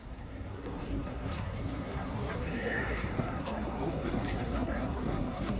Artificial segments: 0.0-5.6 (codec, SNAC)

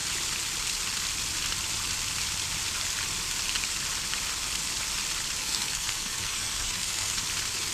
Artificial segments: 5.4-7.2 (codec, SNAC)

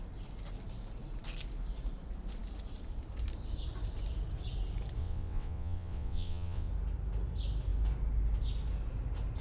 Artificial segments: 5.0-6.7 (vocoder, WaveNeXt)

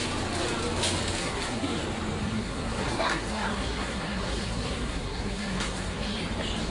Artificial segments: 1.2-1.8 (codec, SNAC); 2.2-6.2

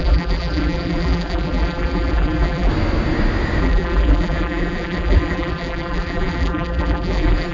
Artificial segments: 0.0-2.7 (vocoder, BigVGAN v2); 3.6-7.5

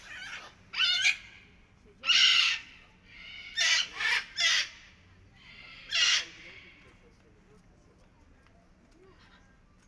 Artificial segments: 2.3-2.9 (vocoder, Vocos)

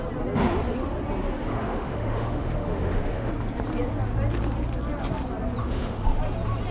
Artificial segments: 1.5-3.3 (autoencoder, DAC-VAE); 5.6-6.2